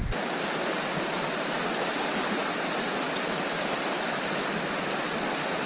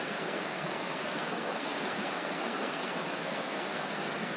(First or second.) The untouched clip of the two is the first